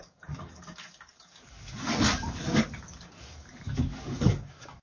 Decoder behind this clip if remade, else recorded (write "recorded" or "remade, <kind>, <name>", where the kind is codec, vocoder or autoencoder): remade, codec, DAC